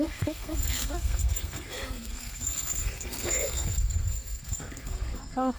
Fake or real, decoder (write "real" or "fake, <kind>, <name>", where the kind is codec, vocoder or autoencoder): fake, codec, SNAC